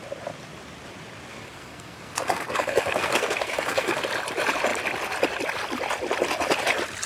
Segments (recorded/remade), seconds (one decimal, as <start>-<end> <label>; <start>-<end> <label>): 0.0-1.3 recorded; 1.3-4.0 remade; 4.0-7.1 recorded